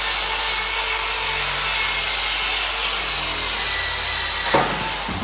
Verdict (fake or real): real